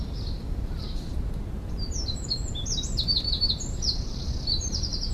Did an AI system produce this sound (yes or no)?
yes